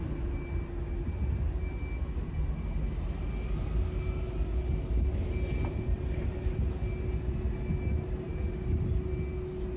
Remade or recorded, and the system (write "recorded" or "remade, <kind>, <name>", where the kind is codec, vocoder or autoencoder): recorded